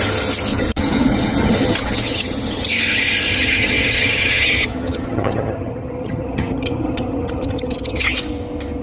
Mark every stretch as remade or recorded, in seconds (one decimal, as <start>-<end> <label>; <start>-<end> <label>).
0.0-0.5 recorded; 0.5-2.7 remade; 2.7-3.3 recorded; 3.3-8.2 remade; 8.2-8.8 recorded